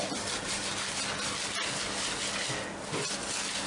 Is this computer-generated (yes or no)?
no